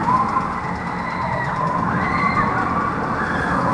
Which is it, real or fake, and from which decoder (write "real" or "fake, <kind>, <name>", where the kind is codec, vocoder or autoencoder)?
real